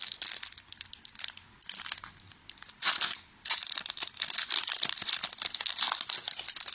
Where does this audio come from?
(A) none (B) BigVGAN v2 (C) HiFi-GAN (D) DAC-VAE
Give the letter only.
A